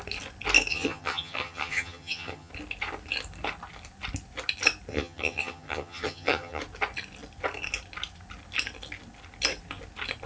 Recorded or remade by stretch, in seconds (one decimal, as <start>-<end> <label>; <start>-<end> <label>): 0.0-0.7 recorded; 0.7-2.5 remade; 2.5-4.9 recorded; 4.9-6.6 remade; 6.6-10.3 recorded